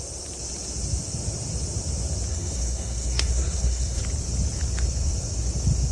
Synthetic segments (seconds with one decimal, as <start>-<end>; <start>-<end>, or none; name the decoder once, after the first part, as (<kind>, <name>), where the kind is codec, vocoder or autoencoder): 2.3-4.0 (codec, SNAC)